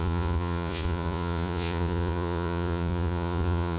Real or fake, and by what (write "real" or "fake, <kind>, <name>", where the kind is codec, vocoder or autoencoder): fake, vocoder, Vocos